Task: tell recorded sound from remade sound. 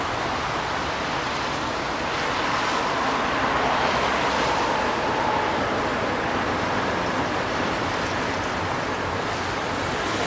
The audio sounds recorded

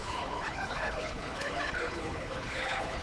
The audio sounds remade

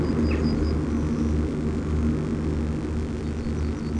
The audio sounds recorded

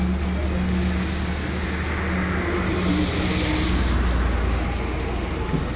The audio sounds recorded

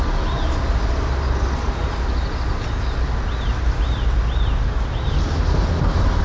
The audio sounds recorded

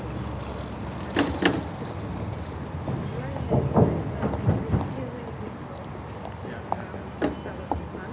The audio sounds recorded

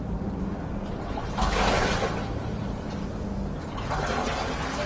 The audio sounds recorded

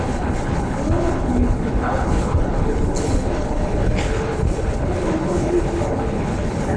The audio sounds remade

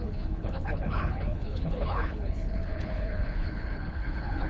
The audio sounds remade